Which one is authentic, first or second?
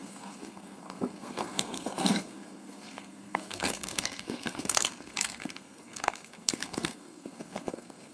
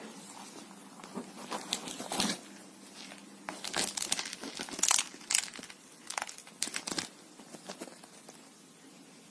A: second